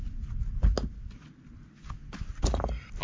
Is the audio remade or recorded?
recorded